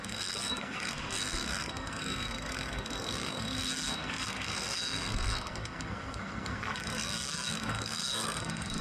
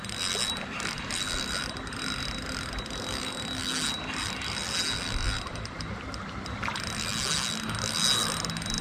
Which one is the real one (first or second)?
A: second